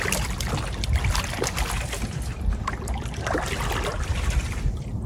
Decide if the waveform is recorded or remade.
recorded